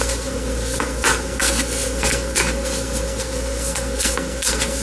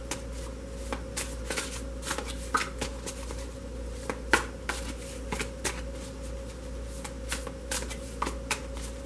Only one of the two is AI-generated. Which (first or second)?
first